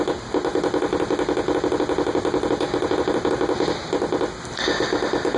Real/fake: real